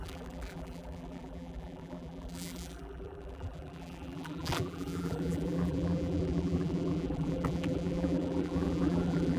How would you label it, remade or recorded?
remade